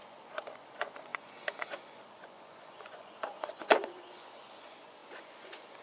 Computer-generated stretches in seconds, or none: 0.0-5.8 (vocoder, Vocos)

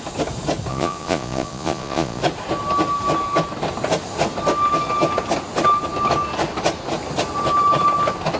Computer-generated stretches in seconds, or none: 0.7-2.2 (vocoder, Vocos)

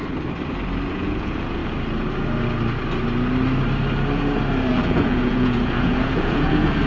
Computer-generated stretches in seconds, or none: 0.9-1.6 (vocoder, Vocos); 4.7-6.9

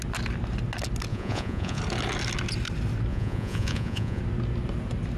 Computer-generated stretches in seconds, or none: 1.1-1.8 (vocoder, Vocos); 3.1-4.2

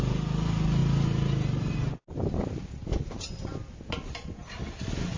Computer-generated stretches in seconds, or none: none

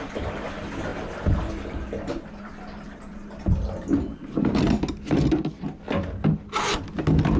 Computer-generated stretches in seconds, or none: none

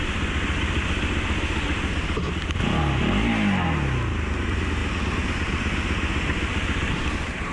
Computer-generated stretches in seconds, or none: none

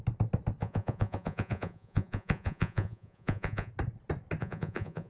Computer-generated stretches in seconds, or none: 0.6-3.7 (vocoder, Vocos); 4.4-5.1